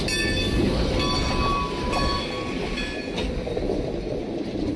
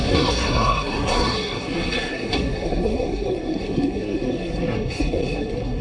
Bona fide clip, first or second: first